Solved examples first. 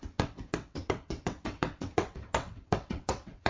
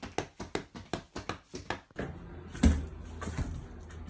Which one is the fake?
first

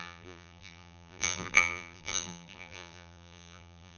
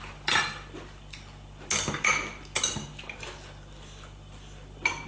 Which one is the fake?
first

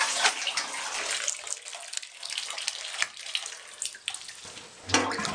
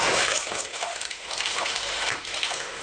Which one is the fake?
second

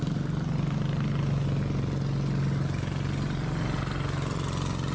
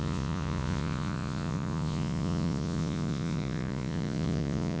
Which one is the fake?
second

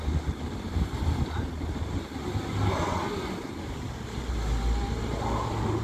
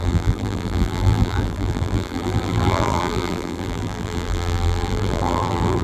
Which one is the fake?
second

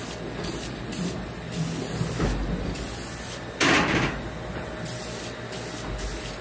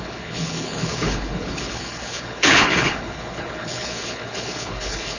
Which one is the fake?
second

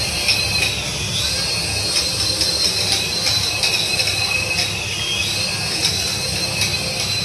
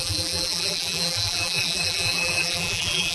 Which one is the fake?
second